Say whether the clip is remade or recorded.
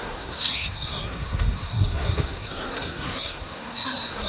remade